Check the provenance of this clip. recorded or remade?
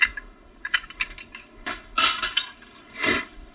recorded